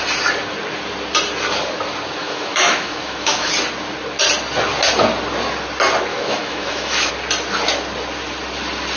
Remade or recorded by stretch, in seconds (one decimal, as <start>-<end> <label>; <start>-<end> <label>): 0.0-2.2 recorded; 2.2-3.5 remade; 3.5-6.1 recorded; 6.1-7.1 remade; 7.1-9.0 recorded